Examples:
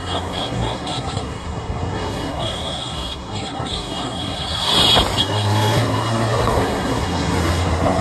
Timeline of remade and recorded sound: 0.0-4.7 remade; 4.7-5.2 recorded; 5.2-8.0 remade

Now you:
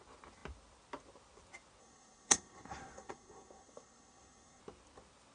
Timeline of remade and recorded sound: 0.0-1.8 recorded; 1.8-4.6 remade; 4.6-5.3 recorded

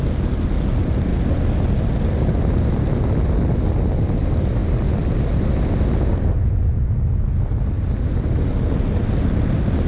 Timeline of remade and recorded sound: 0.0-9.9 recorded